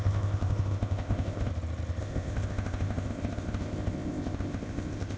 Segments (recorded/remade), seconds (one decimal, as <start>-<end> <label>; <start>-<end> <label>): 0.0-1.5 remade; 1.5-2.0 recorded; 2.0-5.2 remade